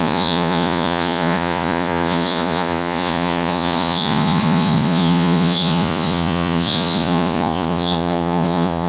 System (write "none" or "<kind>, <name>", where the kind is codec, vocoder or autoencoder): vocoder, Vocos